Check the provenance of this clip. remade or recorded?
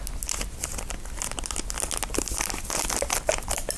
recorded